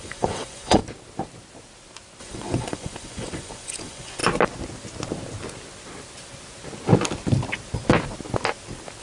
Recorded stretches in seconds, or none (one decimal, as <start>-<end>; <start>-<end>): 0.8-2.2; 4.2-9.0